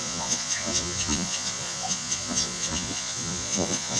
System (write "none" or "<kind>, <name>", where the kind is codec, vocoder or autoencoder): vocoder, Vocos